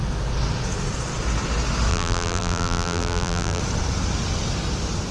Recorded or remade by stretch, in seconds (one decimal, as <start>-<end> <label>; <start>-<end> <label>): 0.0-1.9 recorded; 1.9-3.6 remade; 3.6-5.1 recorded